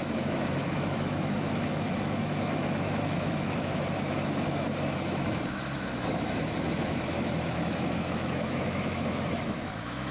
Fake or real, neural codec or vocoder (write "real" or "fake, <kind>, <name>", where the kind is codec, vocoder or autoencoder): fake, autoencoder, DAC-VAE